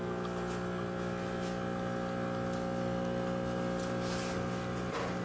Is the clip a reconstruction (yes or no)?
no